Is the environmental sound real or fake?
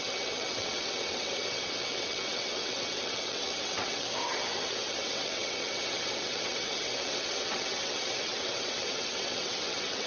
fake